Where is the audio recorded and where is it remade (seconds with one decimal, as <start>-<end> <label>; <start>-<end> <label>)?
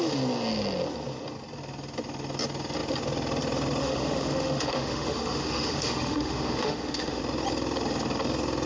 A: 0.0-3.8 recorded; 3.8-7.2 remade; 7.2-8.7 recorded